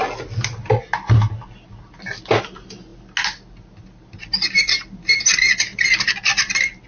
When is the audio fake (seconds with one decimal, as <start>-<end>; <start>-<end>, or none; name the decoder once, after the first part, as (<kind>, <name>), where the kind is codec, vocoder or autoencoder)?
none